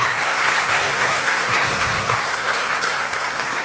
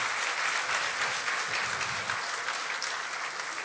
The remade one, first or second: first